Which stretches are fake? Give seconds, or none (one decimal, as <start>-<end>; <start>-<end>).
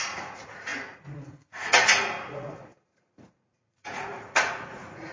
0.0-5.1